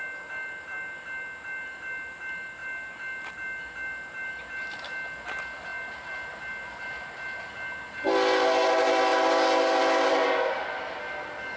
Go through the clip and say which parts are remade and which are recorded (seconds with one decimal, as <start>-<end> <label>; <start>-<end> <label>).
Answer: 0.0-11.6 recorded